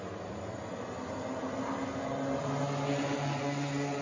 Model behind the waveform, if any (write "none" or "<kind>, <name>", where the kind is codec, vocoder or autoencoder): none